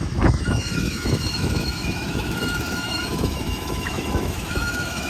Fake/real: fake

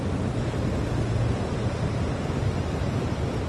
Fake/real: real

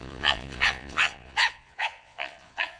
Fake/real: fake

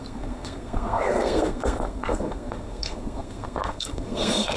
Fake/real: fake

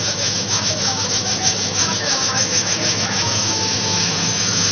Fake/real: fake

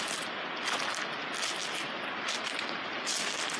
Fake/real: real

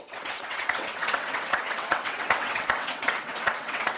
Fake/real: fake